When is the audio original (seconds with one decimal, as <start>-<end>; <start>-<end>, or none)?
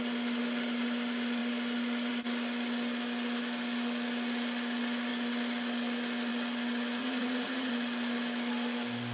0.0-7.0; 7.7-9.1